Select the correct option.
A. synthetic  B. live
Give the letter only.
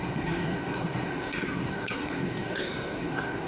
A